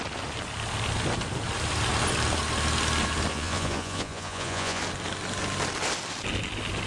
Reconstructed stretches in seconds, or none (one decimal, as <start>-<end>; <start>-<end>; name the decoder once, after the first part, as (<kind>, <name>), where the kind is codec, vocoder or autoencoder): 3.3-4.8 (vocoder, Vocos)